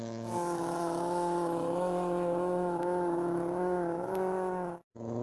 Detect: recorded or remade remade